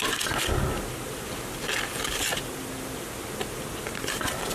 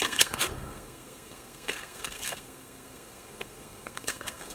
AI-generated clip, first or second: second